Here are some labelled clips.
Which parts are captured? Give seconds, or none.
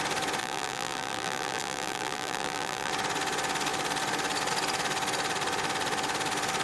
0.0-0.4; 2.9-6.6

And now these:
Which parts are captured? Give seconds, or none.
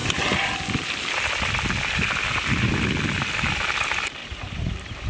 0.0-4.2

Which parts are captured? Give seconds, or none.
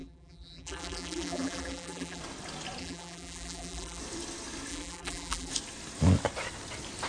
2.2-2.8; 4.0-4.7; 5.5-7.1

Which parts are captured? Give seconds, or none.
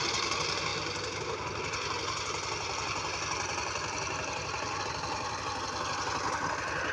0.0-6.9